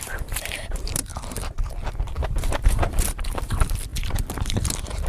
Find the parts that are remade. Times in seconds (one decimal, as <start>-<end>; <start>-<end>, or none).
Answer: 0.0-1.1; 1.9-5.1